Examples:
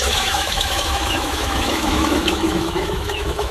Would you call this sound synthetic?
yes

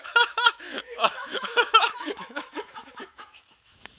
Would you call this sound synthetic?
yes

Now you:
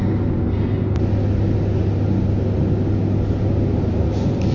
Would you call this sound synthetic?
no